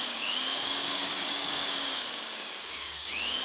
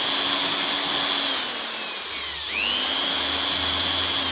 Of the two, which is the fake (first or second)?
first